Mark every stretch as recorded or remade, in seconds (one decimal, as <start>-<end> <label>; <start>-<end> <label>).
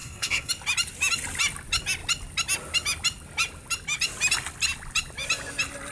0.0-0.5 remade; 0.5-5.9 recorded